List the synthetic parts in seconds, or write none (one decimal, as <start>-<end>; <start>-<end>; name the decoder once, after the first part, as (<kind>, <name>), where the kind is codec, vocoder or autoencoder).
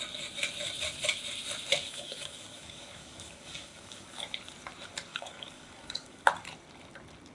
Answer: 1.8-4.2 (codec, DAC); 5.1-6.2